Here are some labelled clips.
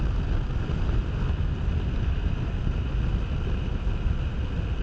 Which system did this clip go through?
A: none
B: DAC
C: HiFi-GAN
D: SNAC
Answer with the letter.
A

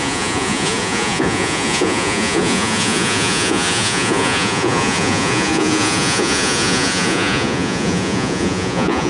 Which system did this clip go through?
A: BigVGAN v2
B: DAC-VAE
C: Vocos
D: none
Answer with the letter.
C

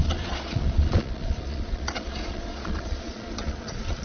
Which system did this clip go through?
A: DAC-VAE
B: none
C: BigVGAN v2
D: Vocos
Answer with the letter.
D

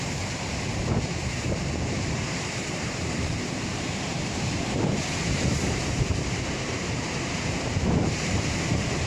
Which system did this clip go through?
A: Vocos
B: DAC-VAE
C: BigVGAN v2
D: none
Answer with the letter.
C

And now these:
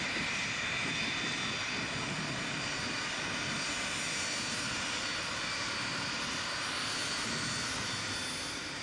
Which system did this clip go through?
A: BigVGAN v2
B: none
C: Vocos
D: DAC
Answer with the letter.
B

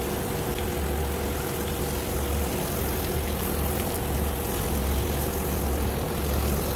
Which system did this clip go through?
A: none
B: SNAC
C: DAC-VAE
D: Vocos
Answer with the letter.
A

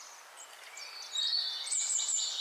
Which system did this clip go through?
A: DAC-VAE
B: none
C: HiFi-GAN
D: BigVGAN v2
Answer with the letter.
B